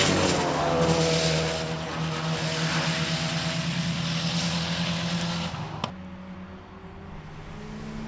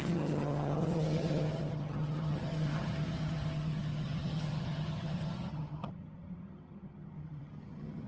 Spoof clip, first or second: second